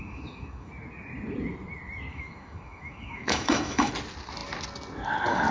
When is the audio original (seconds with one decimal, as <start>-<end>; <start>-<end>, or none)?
0.7-2.1; 3.9-5.5